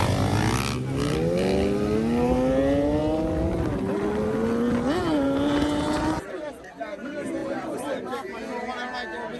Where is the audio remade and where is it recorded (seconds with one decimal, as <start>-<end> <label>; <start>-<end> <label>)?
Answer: 0.0-5.0 recorded; 5.0-6.7 remade; 6.7-7.4 recorded; 7.4-8.4 remade; 8.4-9.4 recorded